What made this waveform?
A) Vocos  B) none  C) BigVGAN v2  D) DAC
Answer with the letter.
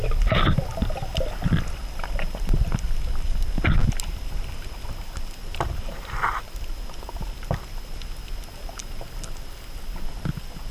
B